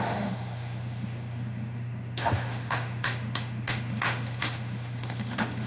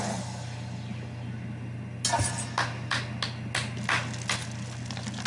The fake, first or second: first